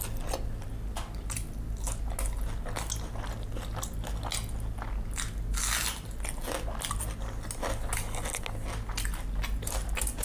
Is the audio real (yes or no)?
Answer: yes